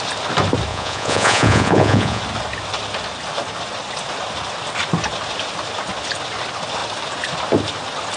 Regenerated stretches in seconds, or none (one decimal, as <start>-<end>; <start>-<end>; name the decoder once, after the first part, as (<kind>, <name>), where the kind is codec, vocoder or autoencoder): 0.7-2.2 (vocoder, Vocos)